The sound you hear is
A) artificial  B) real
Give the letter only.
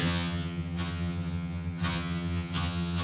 A